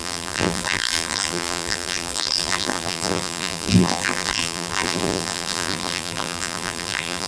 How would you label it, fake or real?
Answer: fake